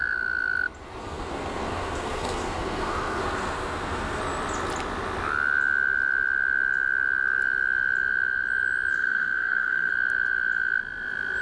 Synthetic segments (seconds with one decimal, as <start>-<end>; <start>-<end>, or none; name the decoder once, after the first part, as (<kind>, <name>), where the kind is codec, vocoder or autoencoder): 1.0-4.2 (codec, SNAC); 8.9-9.9